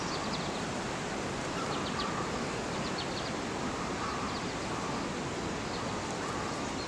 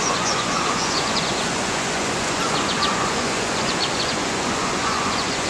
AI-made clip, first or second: second